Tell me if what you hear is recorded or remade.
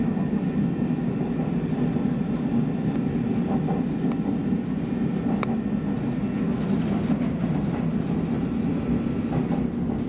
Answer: recorded